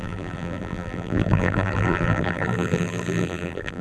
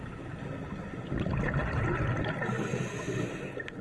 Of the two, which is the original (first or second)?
second